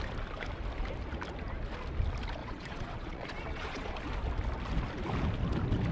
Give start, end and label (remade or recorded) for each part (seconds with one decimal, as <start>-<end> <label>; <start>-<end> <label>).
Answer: 0.0-2.4 recorded; 2.4-3.9 remade; 3.9-5.9 recorded